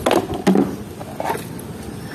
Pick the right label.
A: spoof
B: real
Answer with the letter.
B